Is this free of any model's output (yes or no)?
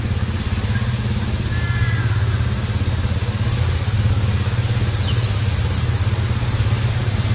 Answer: yes